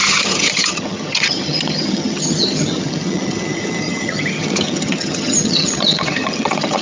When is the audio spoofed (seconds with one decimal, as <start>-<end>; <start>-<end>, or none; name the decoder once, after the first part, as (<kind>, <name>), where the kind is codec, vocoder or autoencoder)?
0.0-6.8 (vocoder, HiFi-GAN)